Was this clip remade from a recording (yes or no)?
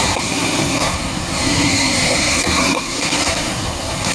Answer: yes